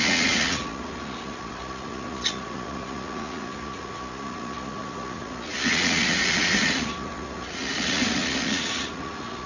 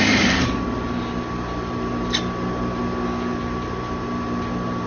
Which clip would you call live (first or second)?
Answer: second